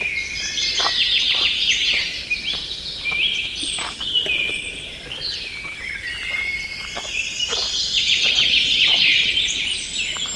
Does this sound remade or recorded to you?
remade